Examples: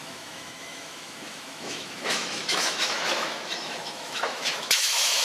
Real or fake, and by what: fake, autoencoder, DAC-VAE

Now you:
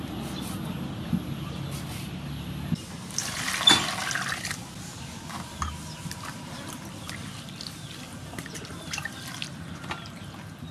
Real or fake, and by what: real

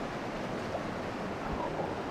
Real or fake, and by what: real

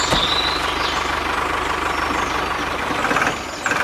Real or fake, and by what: real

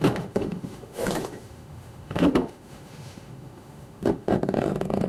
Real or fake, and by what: fake, autoencoder, DAC-VAE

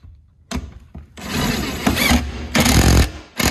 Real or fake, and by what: real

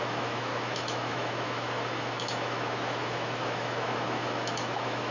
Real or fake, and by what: fake, autoencoder, DAC-VAE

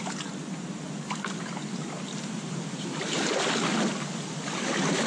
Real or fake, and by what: real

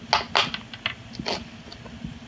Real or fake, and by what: real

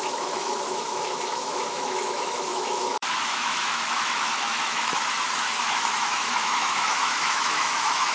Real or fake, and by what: fake, autoencoder, DAC-VAE